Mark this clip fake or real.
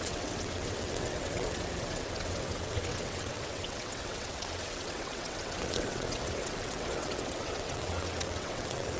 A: fake